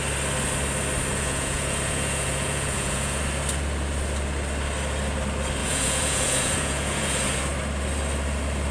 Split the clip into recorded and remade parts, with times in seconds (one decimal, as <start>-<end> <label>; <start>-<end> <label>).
0.0-1.1 recorded; 1.1-3.2 remade; 3.2-5.6 recorded; 5.6-7.4 remade; 7.4-8.7 recorded